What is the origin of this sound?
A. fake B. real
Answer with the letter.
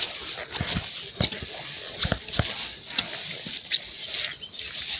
B